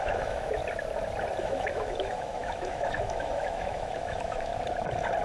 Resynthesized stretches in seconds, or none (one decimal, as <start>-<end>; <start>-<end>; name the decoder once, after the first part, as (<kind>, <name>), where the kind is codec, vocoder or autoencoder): 0.0-0.6 (autoencoder, DAC-VAE); 1.4-4.5